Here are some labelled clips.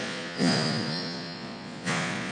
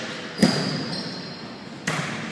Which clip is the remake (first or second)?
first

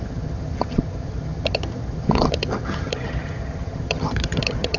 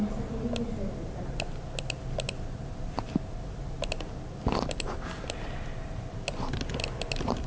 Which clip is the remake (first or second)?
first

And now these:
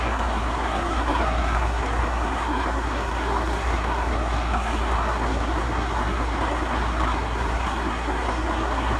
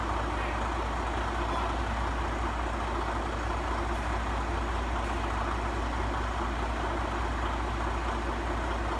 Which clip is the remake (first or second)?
first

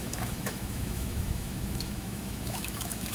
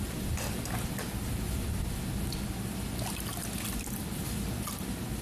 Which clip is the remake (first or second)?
first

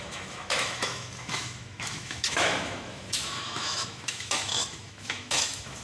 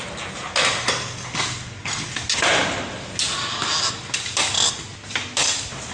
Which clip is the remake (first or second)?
first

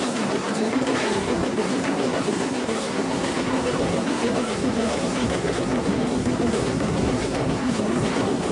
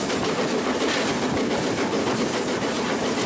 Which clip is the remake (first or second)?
first